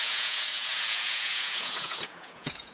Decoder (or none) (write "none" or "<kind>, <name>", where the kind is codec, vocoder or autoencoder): vocoder, Vocos